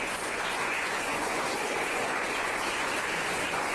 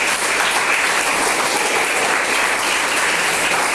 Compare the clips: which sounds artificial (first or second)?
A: first